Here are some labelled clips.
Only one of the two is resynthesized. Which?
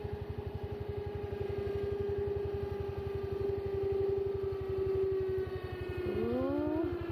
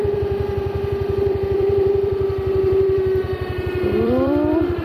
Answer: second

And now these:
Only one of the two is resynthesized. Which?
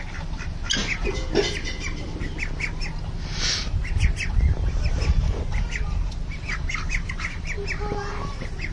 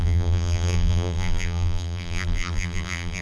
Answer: second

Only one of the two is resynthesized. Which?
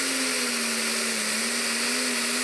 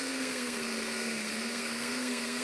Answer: second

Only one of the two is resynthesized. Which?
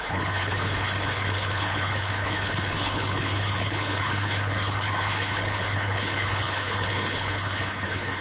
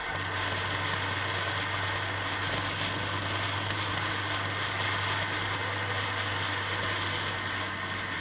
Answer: first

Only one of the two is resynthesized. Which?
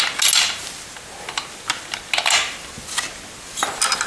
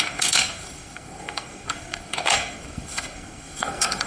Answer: second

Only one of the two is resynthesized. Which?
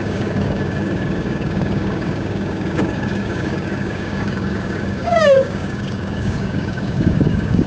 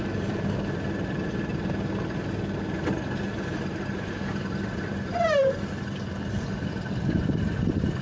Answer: first